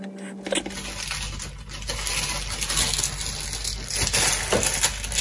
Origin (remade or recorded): recorded